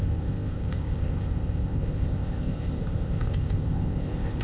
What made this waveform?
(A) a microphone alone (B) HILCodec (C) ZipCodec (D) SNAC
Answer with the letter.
C